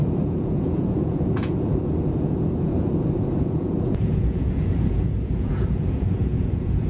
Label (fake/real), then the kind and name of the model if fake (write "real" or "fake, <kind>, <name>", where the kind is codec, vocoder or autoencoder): fake, vocoder, Vocos